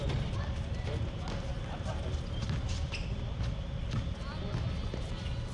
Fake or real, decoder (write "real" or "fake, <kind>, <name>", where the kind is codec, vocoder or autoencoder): real